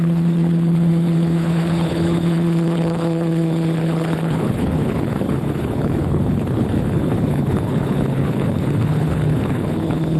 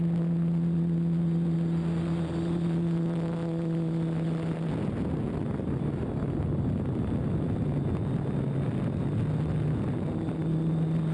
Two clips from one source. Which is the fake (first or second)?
first